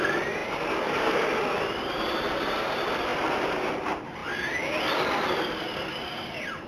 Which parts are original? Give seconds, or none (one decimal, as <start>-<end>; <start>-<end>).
4.2-5.3